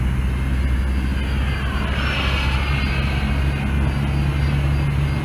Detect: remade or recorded recorded